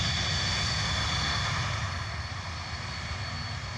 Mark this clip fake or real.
real